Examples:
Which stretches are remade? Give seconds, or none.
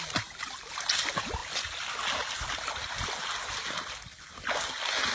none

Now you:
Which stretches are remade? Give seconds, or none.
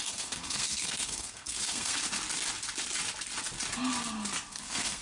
0.0-2.0 (codec, SNAC); 4.5-5.0